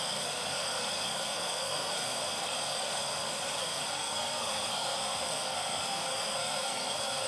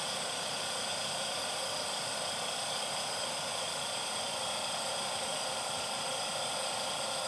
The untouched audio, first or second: second